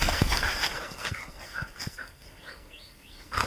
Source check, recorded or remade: remade